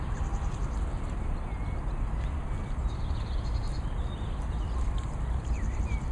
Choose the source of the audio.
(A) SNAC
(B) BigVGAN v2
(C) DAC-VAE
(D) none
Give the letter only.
D